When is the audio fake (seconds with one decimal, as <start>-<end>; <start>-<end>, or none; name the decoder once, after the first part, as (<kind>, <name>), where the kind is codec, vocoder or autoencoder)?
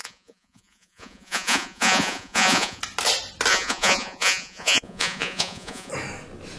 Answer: 0.0-2.8 (vocoder, Vocos); 3.5-5.9